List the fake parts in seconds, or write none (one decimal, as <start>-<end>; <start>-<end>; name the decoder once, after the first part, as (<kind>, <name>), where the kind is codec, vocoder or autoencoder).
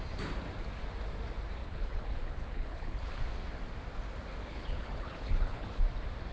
1.6-3.2 (codec, HILCodec); 4.4-5.8